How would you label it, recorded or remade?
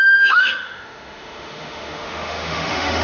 remade